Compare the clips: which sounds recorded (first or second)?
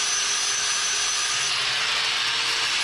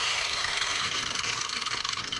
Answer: first